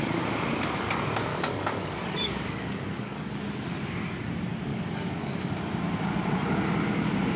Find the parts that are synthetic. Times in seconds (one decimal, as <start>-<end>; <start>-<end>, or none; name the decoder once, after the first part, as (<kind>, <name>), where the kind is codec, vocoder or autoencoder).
1.3-3.4 (codec, DAC); 4.7-5.5